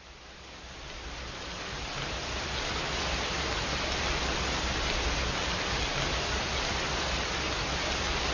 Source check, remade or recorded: recorded